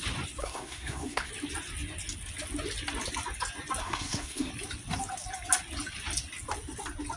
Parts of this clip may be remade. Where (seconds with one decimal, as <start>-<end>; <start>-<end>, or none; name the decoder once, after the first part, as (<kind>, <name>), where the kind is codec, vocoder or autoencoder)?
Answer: 0.4-1.3 (codec, SNAC); 3.8-4.5